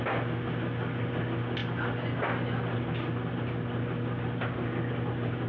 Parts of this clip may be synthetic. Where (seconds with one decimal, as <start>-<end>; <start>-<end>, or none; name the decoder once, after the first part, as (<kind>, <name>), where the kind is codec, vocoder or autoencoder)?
none